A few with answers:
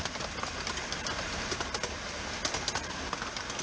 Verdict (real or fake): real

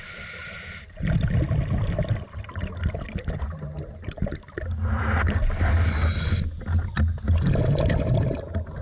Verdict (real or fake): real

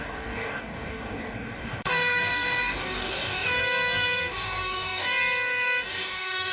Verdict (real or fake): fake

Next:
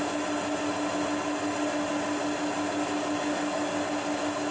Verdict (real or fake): real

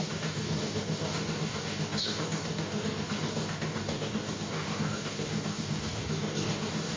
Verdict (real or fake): fake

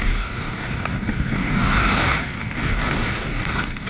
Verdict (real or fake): fake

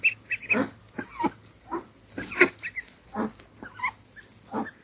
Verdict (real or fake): real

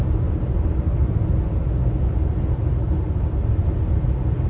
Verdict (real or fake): real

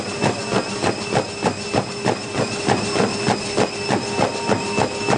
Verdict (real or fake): real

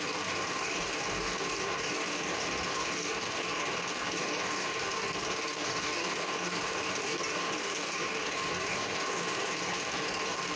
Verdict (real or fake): fake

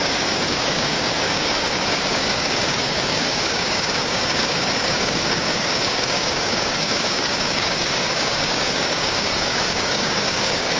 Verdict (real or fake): fake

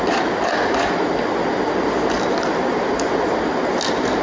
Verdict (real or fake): real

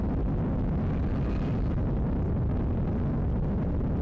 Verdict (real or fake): real